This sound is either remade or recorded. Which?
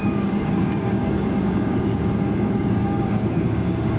remade